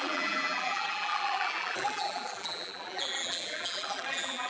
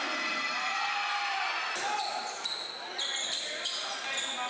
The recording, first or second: second